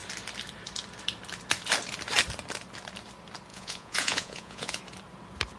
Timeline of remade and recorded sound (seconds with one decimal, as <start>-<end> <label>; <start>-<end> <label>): 0.0-3.5 recorded; 3.5-4.8 remade; 4.8-5.6 recorded

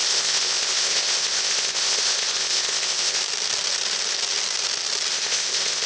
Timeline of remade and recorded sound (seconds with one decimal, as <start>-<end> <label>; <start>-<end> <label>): 0.0-3.2 remade; 3.2-5.1 recorded; 5.1-5.9 remade